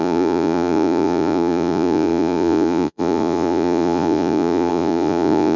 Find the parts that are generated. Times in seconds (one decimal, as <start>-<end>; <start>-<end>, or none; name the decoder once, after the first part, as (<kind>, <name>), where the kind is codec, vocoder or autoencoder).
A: 0.0-5.6 (vocoder, Vocos)